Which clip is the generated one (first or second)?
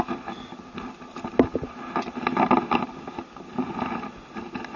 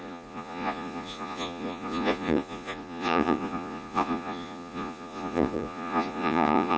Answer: second